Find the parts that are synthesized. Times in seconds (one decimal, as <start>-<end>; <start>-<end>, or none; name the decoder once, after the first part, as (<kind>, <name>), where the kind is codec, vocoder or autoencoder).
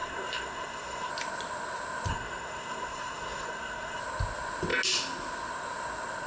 0.0-1.1 (codec, SNAC); 2.1-4.0